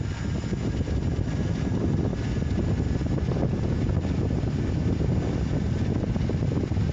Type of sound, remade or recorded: recorded